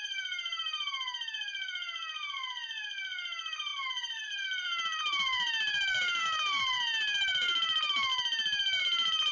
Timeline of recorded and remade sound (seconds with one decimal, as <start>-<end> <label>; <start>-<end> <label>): 0.0-0.7 remade; 0.7-1.3 recorded; 1.3-8.1 remade; 8.1-8.8 recorded; 8.8-9.3 remade